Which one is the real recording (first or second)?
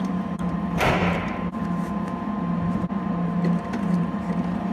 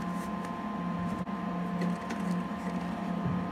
second